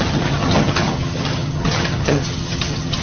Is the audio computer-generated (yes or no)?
yes